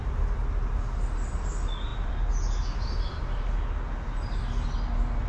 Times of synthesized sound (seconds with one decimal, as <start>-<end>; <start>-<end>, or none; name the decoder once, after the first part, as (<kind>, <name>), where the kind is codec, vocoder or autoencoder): none